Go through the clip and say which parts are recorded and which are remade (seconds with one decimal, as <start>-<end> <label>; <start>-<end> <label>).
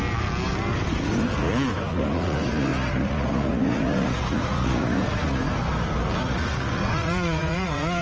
0.0-1.7 recorded; 1.7-5.4 remade; 5.4-6.2 recorded; 6.2-8.0 remade